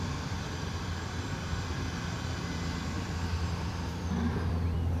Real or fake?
fake